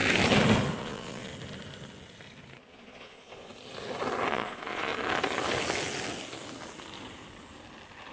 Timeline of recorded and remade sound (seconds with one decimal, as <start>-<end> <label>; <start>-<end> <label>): 0.0-0.8 recorded; 0.8-1.3 remade; 1.3-2.7 recorded; 2.7-3.5 remade; 3.5-4.3 recorded; 4.3-4.9 remade; 4.9-8.1 recorded